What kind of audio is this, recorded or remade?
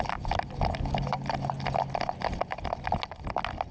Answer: recorded